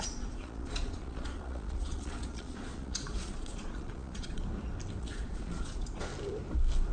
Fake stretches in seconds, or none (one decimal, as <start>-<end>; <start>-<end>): 0.0-4.4; 5.0-6.1